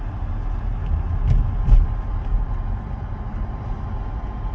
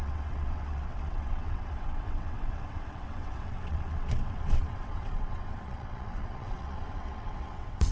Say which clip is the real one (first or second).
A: first